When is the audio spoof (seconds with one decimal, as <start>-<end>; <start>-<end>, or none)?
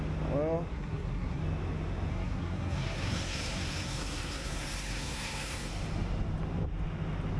0.7-1.4; 2.1-5.7